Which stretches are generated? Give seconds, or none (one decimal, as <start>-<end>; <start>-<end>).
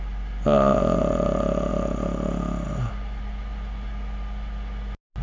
none